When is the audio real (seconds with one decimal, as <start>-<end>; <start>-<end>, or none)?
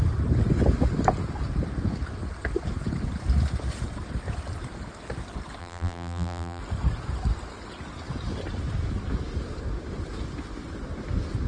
0.0-5.6; 6.6-11.5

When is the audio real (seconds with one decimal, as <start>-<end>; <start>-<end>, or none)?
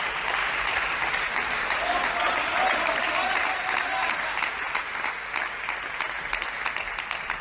0.0-0.4; 4.8-7.4